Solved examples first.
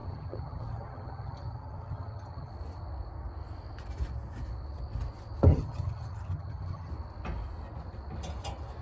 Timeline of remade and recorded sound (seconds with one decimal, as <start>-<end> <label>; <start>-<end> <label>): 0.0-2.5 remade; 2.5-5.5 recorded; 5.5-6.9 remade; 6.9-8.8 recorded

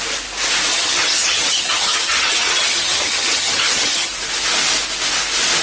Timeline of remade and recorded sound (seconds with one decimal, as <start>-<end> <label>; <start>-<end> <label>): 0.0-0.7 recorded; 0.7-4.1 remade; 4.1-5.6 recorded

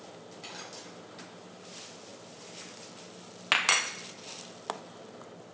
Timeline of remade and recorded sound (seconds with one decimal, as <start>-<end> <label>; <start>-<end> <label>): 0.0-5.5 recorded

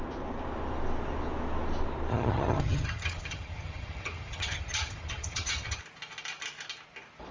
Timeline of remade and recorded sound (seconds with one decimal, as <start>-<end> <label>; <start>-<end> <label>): 0.0-2.1 recorded; 2.1-5.8 remade; 5.8-7.3 recorded

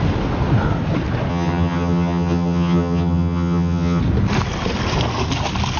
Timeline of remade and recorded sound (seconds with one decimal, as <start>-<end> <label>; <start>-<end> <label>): 0.0-1.3 recorded; 1.3-4.0 remade; 4.0-5.8 recorded

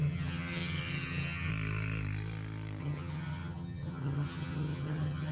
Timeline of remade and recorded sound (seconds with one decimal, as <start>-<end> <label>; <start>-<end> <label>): 0.0-1.5 remade; 1.5-2.8 recorded; 2.8-5.3 remade

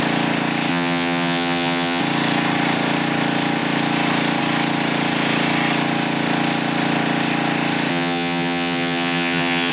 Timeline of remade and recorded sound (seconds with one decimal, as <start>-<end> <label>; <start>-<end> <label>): 0.0-0.7 recorded; 0.7-2.0 remade; 2.0-7.9 recorded; 7.9-9.7 remade

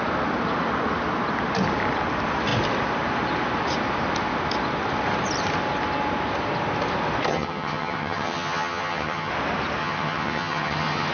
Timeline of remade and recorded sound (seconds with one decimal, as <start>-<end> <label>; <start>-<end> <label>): 0.0-7.3 recorded; 7.3-9.3 remade; 9.3-9.8 recorded; 9.8-11.1 remade